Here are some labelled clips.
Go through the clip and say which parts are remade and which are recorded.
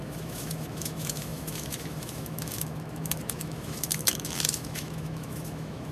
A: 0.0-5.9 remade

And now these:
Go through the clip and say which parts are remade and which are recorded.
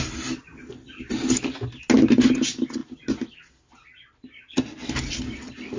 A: 0.0-5.8 recorded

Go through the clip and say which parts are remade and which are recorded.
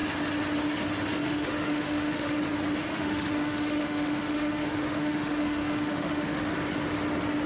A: 0.0-1.2 recorded; 1.2-2.4 remade; 2.4-2.9 recorded; 2.9-6.5 remade; 6.5-7.5 recorded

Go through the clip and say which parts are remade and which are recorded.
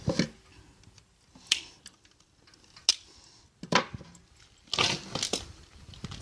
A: 0.0-6.2 recorded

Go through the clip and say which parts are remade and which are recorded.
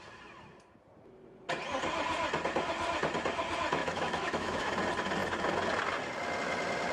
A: 0.0-3.8 recorded; 3.8-4.7 remade; 4.7-6.9 recorded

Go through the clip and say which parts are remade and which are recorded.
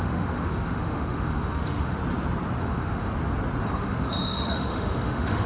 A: 0.0-2.0 remade; 2.0-2.6 recorded; 2.6-3.1 remade; 3.1-3.6 recorded; 3.6-5.5 remade